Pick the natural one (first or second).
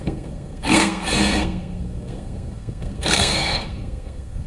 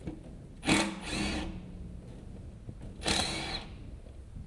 second